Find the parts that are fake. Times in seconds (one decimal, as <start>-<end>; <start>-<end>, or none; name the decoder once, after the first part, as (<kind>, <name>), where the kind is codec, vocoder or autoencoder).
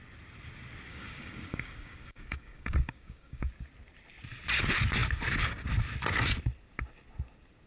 0.9-3.5 (codec, DAC)